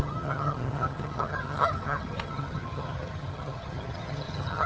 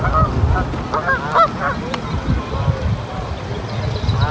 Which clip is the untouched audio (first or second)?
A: second